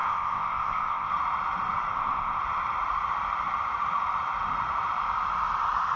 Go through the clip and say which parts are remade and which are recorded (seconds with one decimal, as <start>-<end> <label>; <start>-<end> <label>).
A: 0.0-1.1 remade; 1.1-1.9 recorded; 1.9-2.4 remade; 2.4-6.0 recorded